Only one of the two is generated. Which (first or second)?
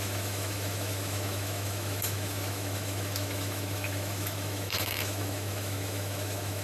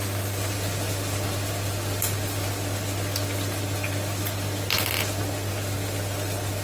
first